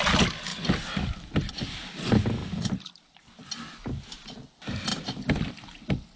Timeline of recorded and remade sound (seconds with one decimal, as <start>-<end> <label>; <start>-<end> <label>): 0.0-0.5 recorded; 0.5-1.5 remade; 1.5-4.9 recorded; 4.9-5.5 remade; 5.5-6.2 recorded